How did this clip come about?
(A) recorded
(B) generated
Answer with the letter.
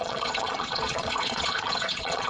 B